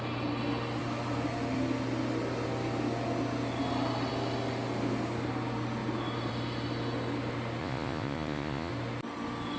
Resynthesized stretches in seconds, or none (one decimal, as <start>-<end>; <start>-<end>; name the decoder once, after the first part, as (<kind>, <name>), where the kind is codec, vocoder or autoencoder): 7.6-8.7 (vocoder, Vocos)